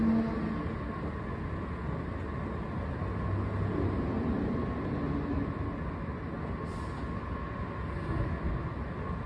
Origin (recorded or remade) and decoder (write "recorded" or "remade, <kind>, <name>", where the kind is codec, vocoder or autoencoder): recorded